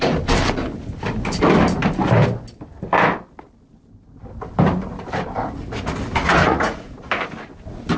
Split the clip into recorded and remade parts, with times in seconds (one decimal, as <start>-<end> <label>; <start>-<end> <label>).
0.0-6.4 recorded; 6.4-7.1 remade; 7.1-8.0 recorded